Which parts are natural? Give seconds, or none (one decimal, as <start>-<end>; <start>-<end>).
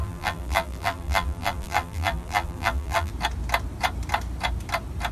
3.1-5.1